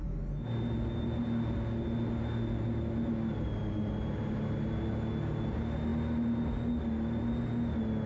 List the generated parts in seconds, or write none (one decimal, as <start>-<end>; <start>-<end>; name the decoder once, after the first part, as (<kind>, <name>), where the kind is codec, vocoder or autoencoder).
none